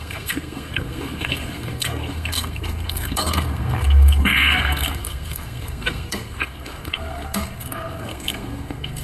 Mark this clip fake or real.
fake